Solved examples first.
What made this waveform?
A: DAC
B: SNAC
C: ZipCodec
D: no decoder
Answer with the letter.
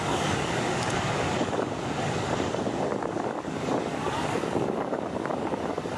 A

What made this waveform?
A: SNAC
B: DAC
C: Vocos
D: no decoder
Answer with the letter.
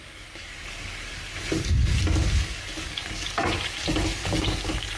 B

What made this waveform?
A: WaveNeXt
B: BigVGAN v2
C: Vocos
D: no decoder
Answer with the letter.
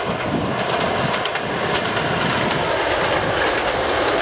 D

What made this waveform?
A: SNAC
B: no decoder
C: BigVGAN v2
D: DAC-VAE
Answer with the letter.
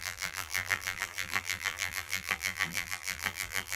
C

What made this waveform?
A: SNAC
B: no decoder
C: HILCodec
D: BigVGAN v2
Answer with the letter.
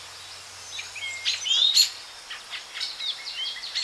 B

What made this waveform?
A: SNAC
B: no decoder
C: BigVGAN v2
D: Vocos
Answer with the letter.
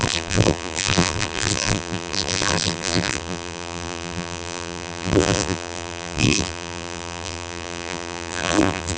C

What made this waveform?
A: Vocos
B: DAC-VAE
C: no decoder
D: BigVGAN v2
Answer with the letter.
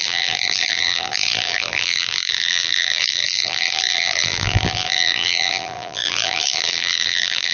D